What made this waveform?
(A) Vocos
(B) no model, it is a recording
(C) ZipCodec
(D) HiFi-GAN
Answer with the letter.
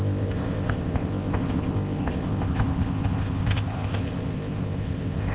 C